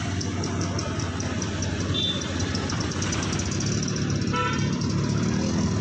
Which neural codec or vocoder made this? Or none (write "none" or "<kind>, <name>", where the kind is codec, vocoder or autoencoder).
none